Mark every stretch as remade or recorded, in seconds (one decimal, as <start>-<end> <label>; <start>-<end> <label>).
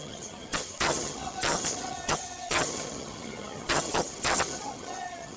0.0-5.4 remade